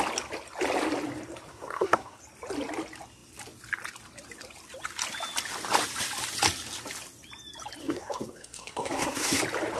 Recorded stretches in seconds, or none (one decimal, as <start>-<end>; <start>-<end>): 0.0-1.5; 2.2-7.8; 9.4-9.8